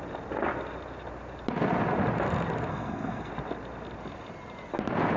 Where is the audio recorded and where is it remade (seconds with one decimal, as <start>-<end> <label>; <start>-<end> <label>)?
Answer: 0.0-2.7 recorded; 2.7-3.3 remade; 3.3-5.2 recorded